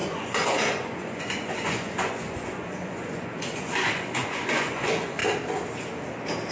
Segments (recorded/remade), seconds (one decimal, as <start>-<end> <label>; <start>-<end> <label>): 0.0-5.2 remade; 5.2-6.5 recorded